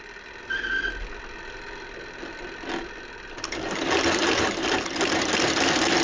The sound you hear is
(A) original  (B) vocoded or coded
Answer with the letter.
B